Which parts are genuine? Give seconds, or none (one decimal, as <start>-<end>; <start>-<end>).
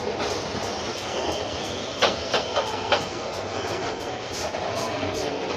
0.0-0.9; 4.3-4.7